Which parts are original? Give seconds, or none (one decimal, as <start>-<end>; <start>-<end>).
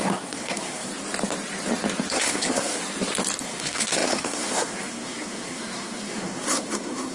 0.9-2.1; 2.8-3.4